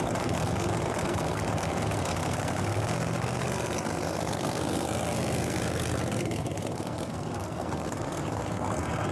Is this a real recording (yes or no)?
no